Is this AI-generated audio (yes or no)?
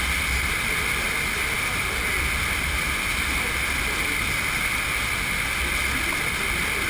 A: no